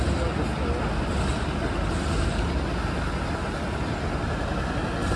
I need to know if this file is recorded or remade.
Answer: recorded